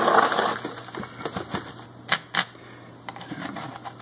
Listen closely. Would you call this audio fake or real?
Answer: real